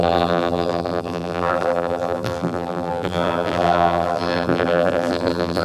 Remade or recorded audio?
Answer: remade